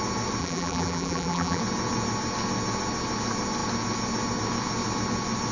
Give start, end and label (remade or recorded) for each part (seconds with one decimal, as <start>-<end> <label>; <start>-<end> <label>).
0.0-0.4 recorded; 0.4-1.6 remade; 1.6-5.5 recorded